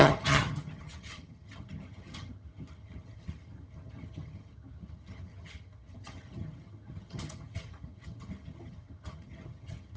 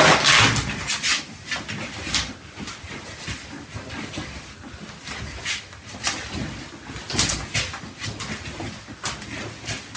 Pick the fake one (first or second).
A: first